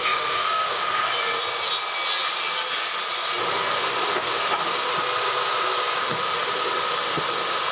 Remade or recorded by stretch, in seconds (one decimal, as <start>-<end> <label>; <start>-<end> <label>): 0.0-1.1 remade; 1.1-3.4 recorded; 3.4-4.9 remade; 4.9-6.0 recorded; 6.0-7.7 remade